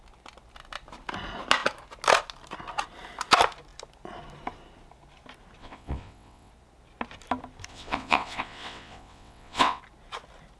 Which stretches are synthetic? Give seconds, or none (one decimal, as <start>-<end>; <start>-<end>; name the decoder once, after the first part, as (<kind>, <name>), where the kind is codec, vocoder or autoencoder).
5.6-6.5 (vocoder, WaveNeXt); 7.7-9.8